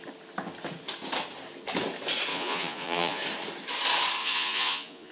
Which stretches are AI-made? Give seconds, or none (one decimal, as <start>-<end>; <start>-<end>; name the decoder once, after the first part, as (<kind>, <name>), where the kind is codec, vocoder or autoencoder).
2.3-3.2 (vocoder, Vocos); 4.2-5.1